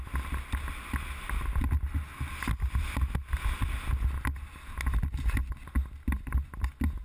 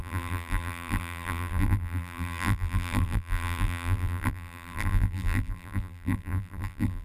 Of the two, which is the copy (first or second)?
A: second